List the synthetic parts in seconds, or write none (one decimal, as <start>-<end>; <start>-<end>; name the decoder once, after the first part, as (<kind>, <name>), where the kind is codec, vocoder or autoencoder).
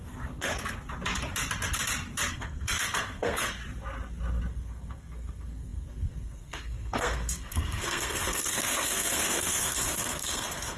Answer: 0.0-0.5 (codec, SNAC); 2.3-3.6; 4.5-10.8